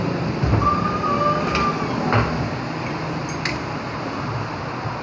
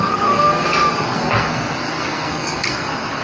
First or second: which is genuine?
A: first